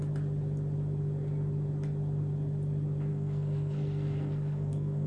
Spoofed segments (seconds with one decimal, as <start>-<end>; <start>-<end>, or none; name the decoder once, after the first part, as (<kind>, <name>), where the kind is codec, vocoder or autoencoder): 3.1-5.1 (codec, SNAC)